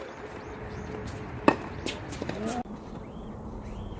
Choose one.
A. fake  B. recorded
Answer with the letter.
A